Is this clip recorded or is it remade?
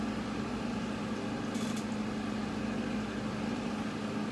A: recorded